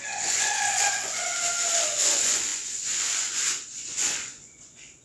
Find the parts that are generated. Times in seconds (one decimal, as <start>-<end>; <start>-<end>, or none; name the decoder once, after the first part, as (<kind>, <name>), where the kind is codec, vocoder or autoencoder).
0.0-1.3 (vocoder, Vocos); 1.9-5.0